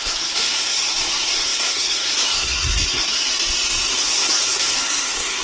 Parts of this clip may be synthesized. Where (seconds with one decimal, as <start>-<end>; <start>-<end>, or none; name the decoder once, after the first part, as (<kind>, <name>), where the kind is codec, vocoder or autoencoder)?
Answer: 0.0-3.3 (codec, SNAC); 3.9-5.4